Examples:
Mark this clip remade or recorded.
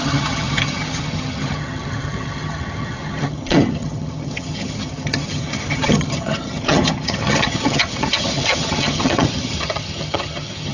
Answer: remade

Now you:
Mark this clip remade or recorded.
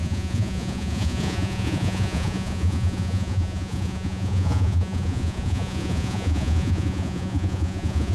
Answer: remade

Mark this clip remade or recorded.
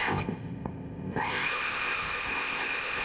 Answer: remade